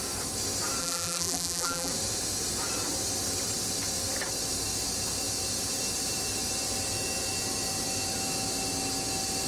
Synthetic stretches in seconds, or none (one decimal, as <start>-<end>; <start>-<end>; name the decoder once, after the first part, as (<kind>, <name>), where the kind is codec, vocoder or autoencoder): 0.8-1.9 (vocoder, BigVGAN v2)